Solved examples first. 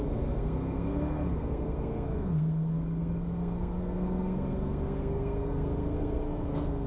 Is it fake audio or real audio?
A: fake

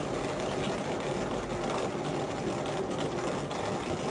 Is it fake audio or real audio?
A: real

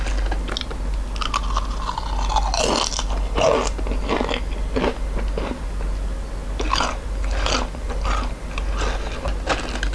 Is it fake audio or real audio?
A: real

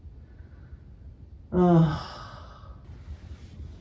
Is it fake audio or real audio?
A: real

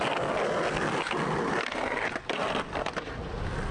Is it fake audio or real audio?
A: real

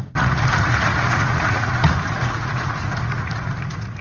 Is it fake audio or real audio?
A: fake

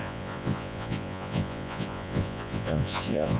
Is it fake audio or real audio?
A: fake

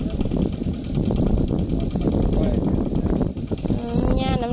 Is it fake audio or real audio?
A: real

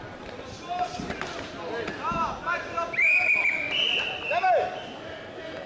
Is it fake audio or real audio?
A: real